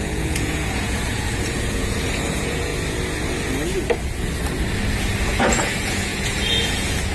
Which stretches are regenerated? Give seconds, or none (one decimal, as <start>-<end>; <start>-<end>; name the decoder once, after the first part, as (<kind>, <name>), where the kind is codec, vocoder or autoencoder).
0.0-2.7 (vocoder, Vocos); 5.2-7.1